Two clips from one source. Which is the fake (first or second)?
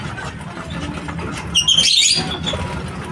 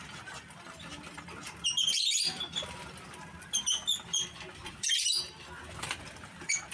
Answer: second